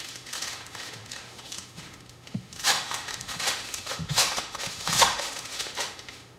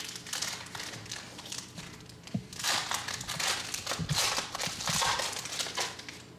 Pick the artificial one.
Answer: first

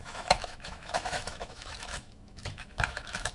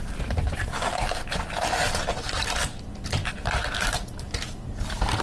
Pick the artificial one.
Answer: first